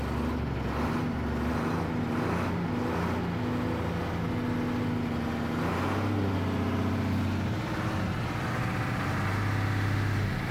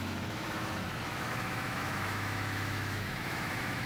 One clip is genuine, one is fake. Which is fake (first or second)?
second